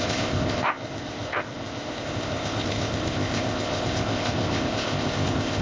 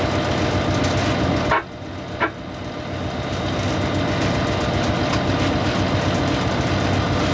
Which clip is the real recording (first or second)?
second